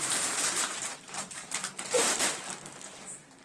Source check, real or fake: fake